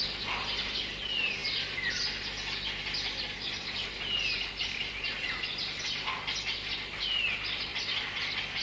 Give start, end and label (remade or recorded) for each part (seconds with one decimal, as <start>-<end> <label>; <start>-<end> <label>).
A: 0.0-8.6 recorded